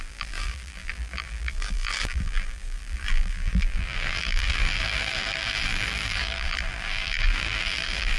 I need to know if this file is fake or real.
fake